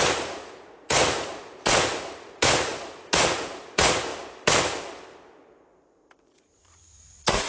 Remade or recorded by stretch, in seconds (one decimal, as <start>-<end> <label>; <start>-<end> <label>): 0.0-4.1 remade; 4.1-6.2 recorded; 6.2-7.5 remade

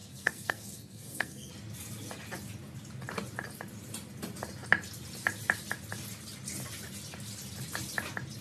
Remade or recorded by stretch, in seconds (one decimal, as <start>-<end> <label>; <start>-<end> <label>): 0.0-1.5 remade; 1.5-8.4 recorded

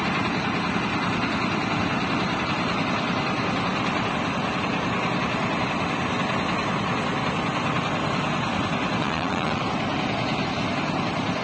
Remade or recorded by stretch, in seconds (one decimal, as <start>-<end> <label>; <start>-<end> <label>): 0.0-9.0 recorded; 9.0-9.6 remade; 9.6-11.4 recorded